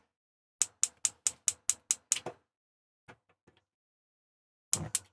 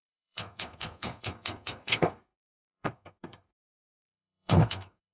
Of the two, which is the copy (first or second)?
second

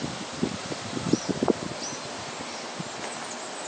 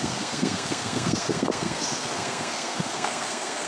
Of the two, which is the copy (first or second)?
second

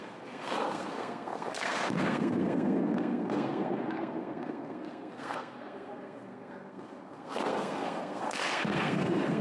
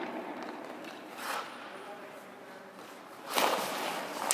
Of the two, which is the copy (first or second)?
first